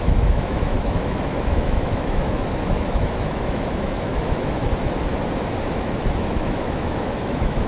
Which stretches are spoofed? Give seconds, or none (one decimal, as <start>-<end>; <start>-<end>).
0.0-4.6; 5.6-7.7